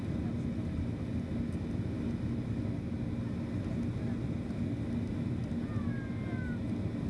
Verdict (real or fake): real